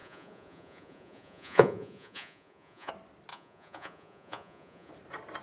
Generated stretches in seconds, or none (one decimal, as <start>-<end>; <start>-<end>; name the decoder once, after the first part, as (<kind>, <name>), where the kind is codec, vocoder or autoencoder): 0.0-2.9 (vocoder, Vocos); 3.3-4.9